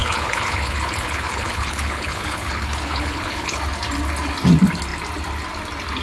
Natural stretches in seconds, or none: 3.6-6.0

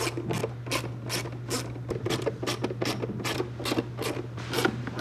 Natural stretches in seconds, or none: 0.0-5.0

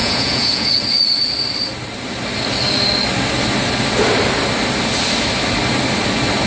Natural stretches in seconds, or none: 0.7-6.5

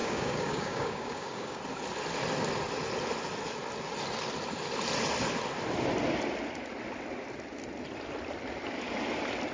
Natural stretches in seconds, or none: 1.6-9.5

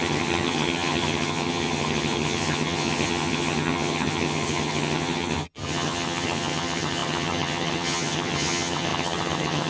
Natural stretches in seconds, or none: none

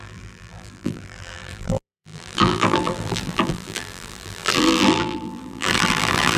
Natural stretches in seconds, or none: none